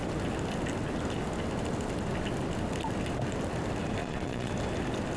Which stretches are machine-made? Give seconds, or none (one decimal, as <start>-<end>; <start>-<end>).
4.0-4.5